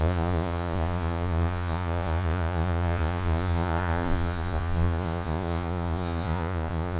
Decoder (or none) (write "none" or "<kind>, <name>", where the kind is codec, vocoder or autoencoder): vocoder, Vocos